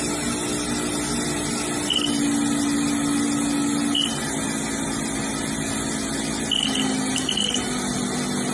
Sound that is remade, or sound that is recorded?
recorded